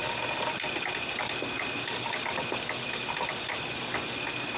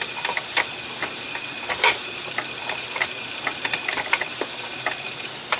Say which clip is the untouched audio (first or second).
first